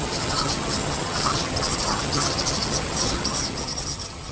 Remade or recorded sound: remade